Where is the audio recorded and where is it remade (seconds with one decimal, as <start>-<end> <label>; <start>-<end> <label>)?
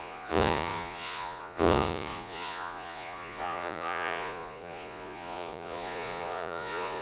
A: 0.0-7.0 remade